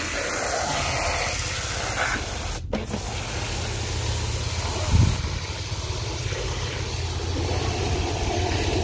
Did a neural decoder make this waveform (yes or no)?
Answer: no